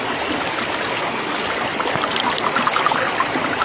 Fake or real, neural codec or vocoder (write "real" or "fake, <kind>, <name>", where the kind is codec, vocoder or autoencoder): real